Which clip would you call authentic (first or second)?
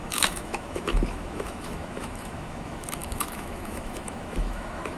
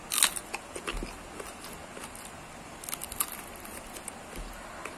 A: second